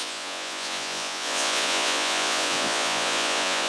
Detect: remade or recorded remade